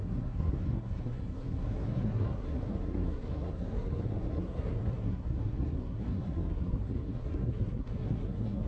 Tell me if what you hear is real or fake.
fake